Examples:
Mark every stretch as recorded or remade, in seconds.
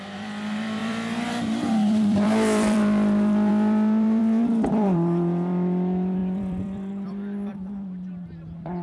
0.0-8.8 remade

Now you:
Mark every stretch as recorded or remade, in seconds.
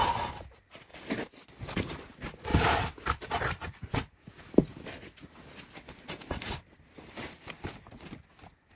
0.0-0.9 recorded; 0.9-1.6 remade; 1.6-2.5 recorded; 2.5-7.5 remade; 7.5-8.8 recorded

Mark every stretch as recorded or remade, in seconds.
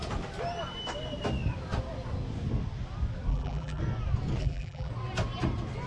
0.0-3.3 recorded; 3.3-3.8 remade; 3.8-4.4 recorded; 4.4-4.9 remade; 4.9-5.9 recorded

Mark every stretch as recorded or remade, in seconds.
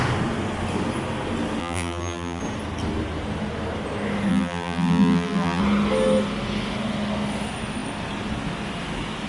0.0-1.6 recorded; 1.6-2.4 remade; 2.4-4.3 recorded; 4.3-5.6 remade; 5.6-9.3 recorded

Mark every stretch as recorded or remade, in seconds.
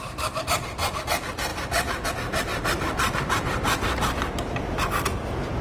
0.0-1.5 recorded; 1.5-2.1 remade; 2.1-5.6 recorded